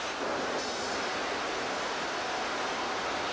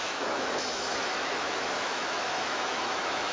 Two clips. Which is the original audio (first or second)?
first